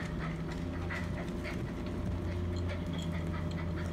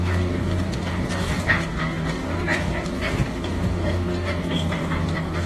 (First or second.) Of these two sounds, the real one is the first